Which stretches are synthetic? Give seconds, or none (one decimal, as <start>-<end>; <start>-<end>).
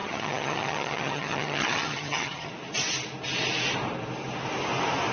0.0-2.5